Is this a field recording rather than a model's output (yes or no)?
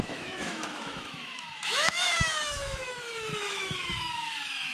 no